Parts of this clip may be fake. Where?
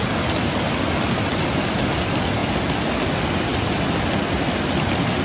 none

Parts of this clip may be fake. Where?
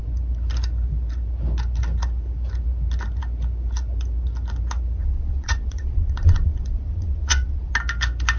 5.0-7.7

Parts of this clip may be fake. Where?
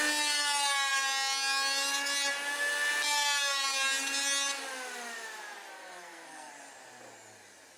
5.7-6.5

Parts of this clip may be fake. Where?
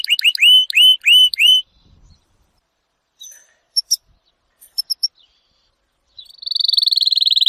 1.2-4.3